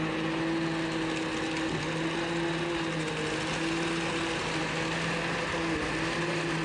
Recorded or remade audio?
recorded